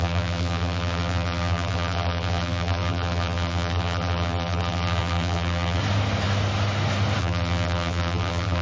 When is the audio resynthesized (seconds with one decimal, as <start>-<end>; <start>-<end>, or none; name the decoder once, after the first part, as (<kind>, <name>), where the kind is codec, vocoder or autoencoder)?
0.0-5.8 (vocoder, BigVGAN v2); 7.2-8.6